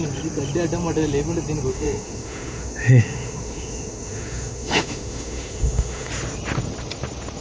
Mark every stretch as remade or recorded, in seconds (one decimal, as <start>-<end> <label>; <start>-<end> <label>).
0.0-1.7 recorded; 1.7-6.1 remade; 6.1-7.4 recorded